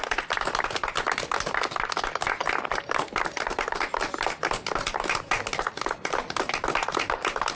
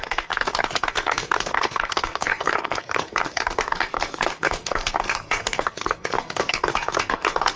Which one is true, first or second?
first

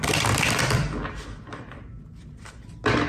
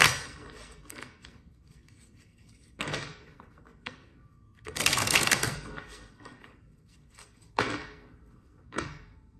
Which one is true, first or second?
first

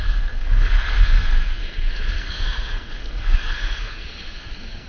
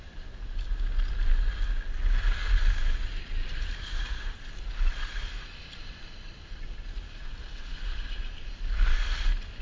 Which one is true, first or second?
second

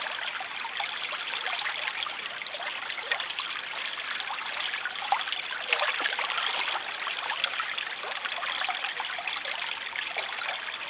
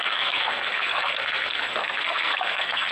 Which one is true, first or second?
first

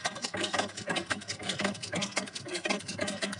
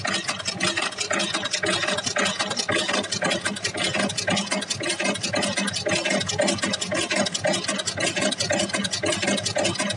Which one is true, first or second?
second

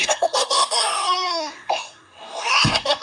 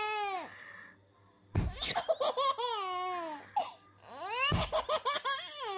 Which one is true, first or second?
second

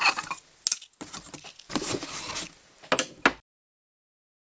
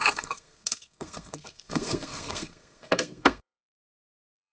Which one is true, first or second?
first